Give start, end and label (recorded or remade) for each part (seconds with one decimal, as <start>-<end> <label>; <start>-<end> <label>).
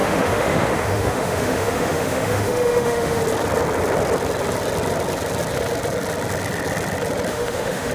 0.0-3.2 remade; 3.2-7.3 recorded; 7.3-7.9 remade